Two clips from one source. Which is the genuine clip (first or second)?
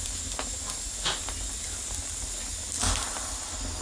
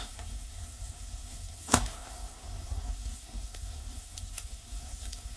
first